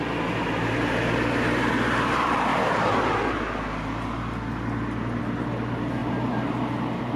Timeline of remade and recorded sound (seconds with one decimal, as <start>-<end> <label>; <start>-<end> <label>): 0.0-7.2 recorded